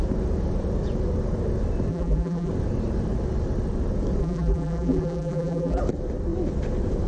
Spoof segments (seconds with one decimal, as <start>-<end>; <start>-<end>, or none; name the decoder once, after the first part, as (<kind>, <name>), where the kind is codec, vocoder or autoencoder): 1.9-2.5 (vocoder, BigVGAN v2); 4.2-5.8